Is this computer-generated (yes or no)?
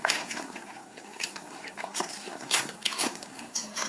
yes